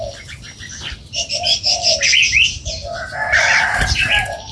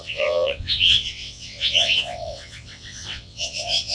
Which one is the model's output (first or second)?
second